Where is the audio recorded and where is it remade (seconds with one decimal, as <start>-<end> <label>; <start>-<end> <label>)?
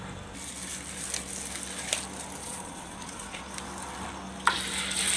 0.0-2.4 recorded; 2.4-3.4 remade; 3.4-5.2 recorded